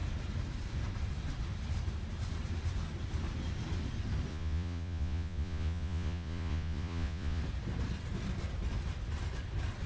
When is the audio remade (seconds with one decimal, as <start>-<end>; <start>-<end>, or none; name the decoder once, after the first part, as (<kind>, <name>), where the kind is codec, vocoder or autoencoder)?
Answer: 4.3-7.4 (vocoder, Vocos)